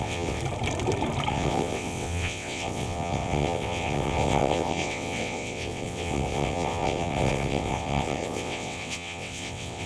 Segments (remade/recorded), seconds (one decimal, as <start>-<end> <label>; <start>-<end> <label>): 0.0-0.4 remade; 0.4-1.3 recorded; 1.3-9.9 remade